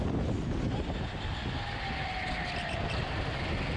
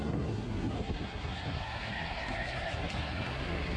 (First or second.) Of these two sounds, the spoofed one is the second